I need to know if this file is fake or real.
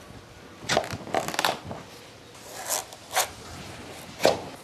real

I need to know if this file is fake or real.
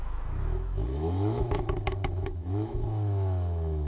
fake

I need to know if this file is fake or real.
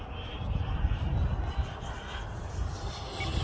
real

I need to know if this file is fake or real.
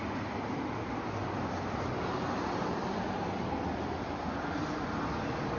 real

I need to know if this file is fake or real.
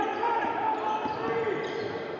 real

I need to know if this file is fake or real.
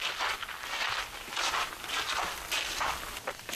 real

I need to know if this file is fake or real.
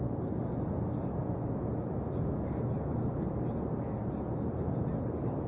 real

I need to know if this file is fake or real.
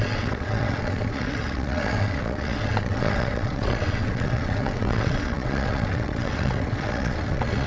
fake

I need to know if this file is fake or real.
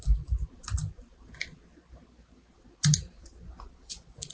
fake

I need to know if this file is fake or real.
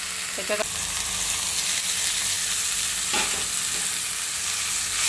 real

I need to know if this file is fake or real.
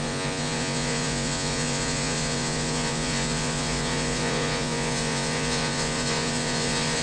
fake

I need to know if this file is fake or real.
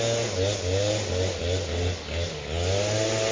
real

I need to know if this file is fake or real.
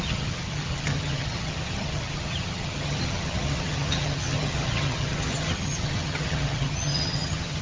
fake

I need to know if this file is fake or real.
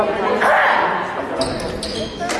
real